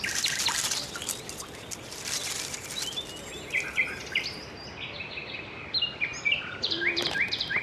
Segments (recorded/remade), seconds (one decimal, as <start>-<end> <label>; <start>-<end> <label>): 0.0-3.3 recorded; 3.3-5.6 remade; 5.6-6.1 recorded; 6.1-7.6 remade